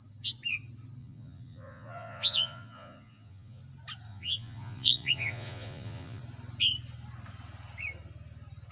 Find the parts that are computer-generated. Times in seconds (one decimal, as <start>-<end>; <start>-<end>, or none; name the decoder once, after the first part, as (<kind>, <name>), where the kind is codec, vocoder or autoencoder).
1.0-3.6 (vocoder, Vocos); 4.1-6.2